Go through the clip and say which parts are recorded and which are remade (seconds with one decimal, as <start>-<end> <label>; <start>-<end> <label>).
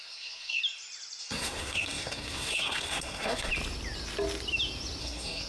0.0-0.6 remade; 0.6-1.2 recorded; 1.2-3.5 remade; 3.5-5.0 recorded; 5.0-5.5 remade